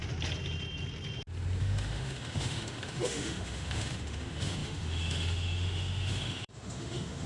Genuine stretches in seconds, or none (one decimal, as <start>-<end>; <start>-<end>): 0.0-1.6